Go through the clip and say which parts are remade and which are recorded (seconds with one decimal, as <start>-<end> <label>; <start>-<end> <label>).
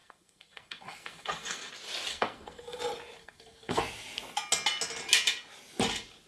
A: 0.0-1.7 remade; 1.7-2.1 recorded; 2.1-2.8 remade; 2.8-3.2 recorded; 3.2-3.8 remade; 3.8-6.3 recorded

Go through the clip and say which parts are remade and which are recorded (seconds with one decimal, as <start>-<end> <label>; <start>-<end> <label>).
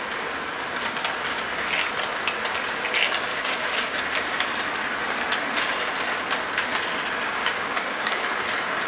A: 0.0-3.3 recorded; 3.3-4.0 remade; 4.0-7.4 recorded; 7.4-8.4 remade; 8.4-8.9 recorded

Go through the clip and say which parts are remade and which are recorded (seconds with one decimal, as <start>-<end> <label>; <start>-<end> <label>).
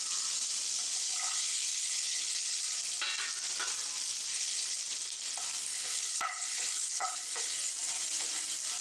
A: 0.0-0.9 recorded; 0.9-2.8 remade; 2.8-4.3 recorded; 4.3-4.8 remade; 4.8-5.7 recorded; 5.7-7.7 remade; 7.7-8.8 recorded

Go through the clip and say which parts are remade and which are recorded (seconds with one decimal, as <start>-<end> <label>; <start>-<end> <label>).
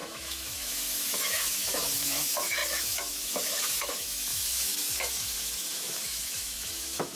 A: 0.0-7.2 remade